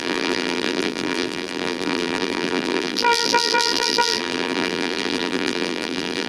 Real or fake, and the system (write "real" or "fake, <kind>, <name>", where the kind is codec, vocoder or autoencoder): fake, vocoder, BigVGAN v2